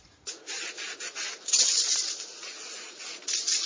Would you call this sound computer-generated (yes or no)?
yes